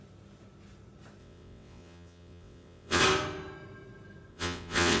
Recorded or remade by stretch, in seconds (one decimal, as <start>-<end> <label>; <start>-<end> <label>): 0.0-1.2 recorded; 1.2-3.0 remade; 3.0-4.3 recorded; 4.3-5.0 remade